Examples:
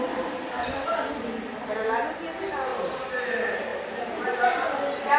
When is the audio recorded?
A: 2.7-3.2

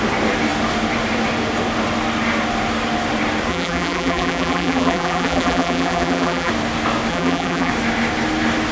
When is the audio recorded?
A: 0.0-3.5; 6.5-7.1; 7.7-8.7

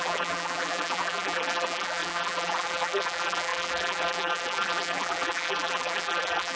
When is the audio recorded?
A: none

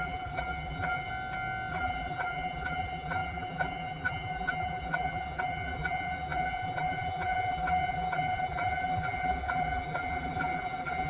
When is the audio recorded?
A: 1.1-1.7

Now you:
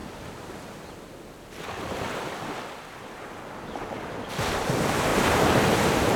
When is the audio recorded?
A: 0.0-5.1